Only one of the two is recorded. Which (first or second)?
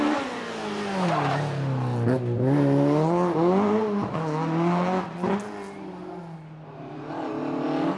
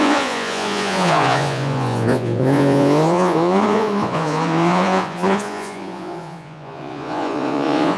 first